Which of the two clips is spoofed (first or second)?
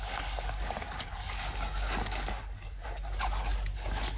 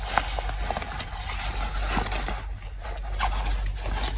first